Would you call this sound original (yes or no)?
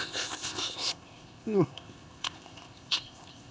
no